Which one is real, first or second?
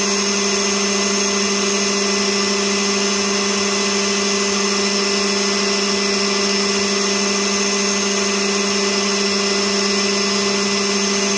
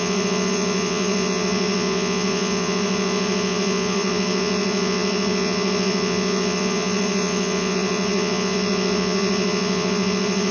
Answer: first